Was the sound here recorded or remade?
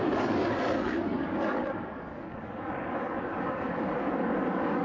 remade